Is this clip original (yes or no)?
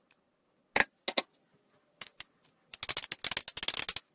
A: yes